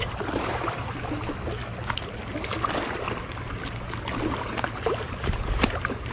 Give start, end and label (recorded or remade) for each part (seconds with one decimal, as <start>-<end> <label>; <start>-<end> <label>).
0.0-1.6 remade; 1.6-5.0 recorded; 5.0-6.1 remade